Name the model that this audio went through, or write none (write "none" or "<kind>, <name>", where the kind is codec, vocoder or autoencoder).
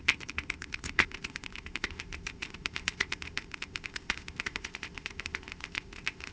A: codec, ZipCodec